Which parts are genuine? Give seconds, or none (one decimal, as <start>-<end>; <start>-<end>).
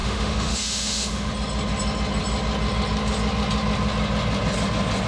1.3-5.1